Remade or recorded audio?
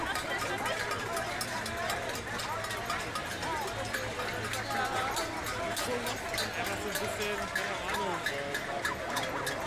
recorded